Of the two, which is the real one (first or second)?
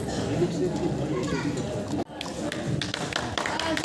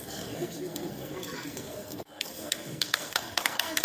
first